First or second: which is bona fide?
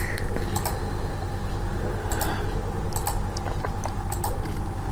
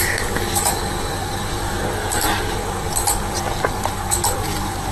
first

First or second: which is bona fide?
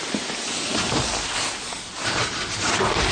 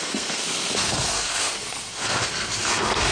first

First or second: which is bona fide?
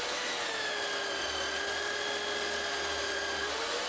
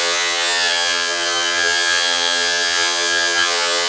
first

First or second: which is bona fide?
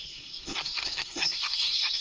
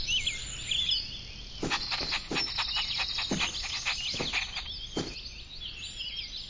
second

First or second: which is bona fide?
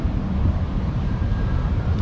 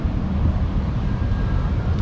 second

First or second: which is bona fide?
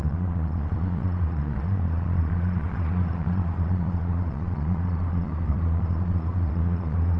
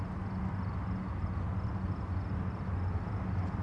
second